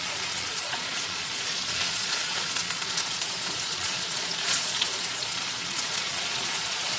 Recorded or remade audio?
remade